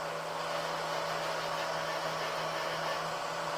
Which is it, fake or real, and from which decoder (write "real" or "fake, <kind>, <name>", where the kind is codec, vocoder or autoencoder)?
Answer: real